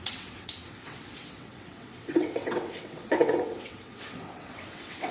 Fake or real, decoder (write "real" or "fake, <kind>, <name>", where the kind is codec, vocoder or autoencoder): fake, vocoder, WaveNeXt